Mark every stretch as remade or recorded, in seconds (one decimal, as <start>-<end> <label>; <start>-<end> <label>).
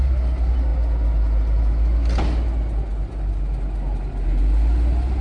0.0-5.2 recorded